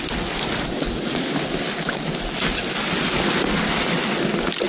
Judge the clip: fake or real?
real